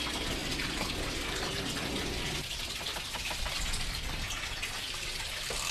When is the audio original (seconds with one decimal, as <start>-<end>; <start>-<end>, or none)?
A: 0.0-5.7